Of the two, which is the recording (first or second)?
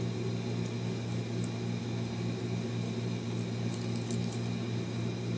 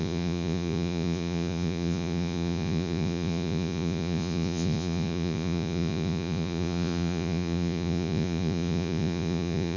first